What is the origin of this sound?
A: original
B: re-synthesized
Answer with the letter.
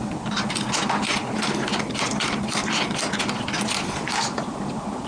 A